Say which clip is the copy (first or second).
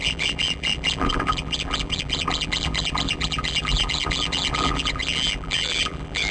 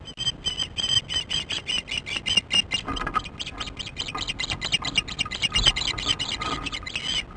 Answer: first